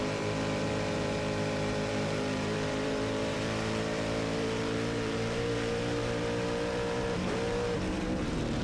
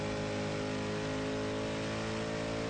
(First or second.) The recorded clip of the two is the second